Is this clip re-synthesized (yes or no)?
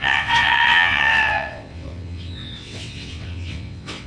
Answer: yes